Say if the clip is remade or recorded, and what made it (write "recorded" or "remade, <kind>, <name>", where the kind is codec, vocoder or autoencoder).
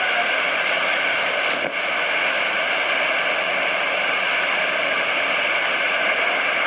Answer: recorded